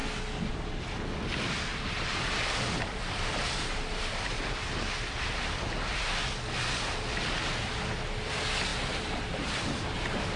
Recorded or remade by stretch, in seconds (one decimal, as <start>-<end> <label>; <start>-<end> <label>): 0.0-1.7 recorded; 1.7-4.5 remade; 4.5-8.7 recorded; 8.7-10.4 remade